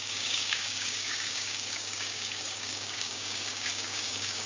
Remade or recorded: remade